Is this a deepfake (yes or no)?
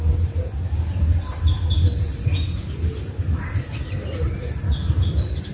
yes